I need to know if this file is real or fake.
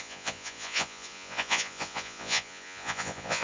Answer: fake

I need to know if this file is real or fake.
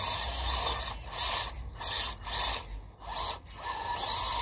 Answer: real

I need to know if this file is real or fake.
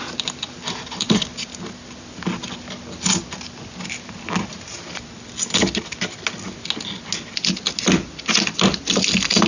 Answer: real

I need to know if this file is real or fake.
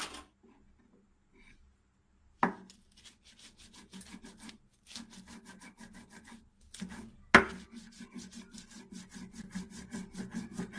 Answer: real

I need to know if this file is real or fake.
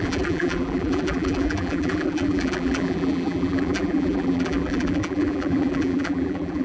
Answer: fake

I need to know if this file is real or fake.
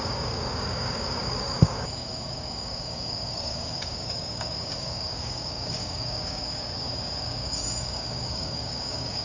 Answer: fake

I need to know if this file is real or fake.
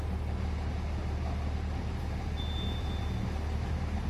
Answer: real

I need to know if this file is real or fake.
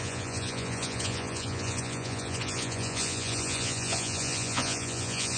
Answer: fake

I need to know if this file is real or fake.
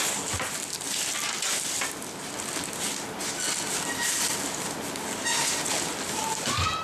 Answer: real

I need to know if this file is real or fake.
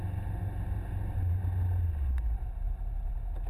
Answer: real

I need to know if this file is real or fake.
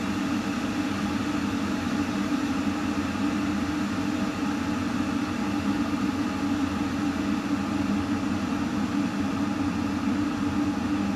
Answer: real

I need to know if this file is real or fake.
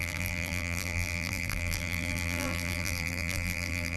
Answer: fake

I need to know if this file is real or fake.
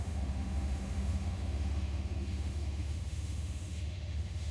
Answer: fake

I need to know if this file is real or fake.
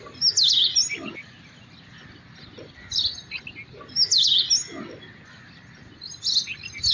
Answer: real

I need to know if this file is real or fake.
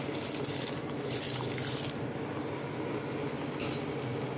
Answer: real